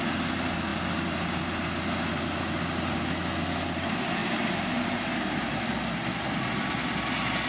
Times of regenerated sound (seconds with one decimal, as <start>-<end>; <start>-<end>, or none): none